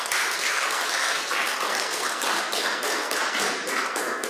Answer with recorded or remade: remade